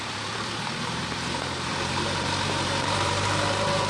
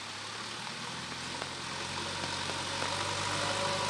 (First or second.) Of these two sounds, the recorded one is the second